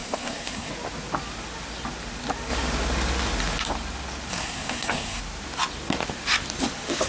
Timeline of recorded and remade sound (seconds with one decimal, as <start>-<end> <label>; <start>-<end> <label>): 0.0-0.7 remade; 0.7-4.3 recorded; 4.3-5.2 remade; 5.2-7.1 recorded